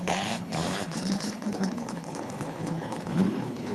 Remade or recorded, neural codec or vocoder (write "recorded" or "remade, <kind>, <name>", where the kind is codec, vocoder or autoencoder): remade, codec, HILCodec